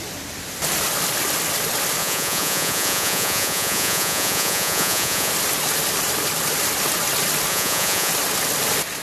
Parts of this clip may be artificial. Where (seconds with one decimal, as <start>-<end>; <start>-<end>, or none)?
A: 2.0-5.3; 7.5-8.1